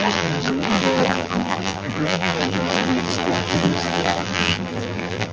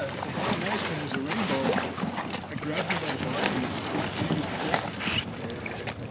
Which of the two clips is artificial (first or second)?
first